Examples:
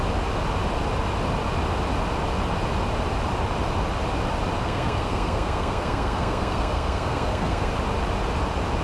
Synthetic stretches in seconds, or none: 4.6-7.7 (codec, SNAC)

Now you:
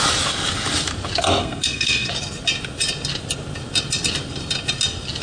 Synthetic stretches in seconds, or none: 1.4-2.1 (codec, SNAC)

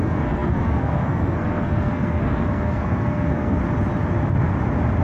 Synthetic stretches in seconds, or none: 0.0-3.6 (codec, SNAC)

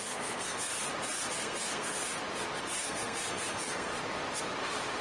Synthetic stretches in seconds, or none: 0.0-0.7 (codec, SNAC); 1.3-2.0; 2.6-3.9

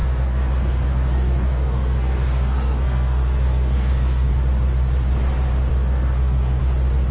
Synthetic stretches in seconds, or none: 0.0-4.3 (codec, SNAC); 5.7-6.6

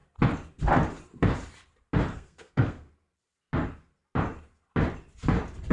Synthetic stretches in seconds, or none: 2.1-2.9 (codec, SNAC)

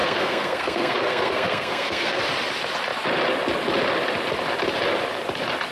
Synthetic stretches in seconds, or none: 0.0-2.2 (codec, SNAC)